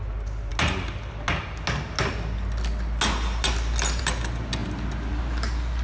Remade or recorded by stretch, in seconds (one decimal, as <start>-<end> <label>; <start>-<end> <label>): 0.0-5.8 recorded